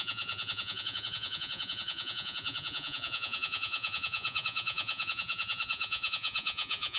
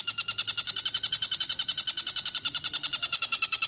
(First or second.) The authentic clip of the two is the second